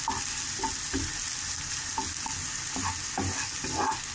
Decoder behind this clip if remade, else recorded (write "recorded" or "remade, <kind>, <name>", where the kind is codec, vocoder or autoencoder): recorded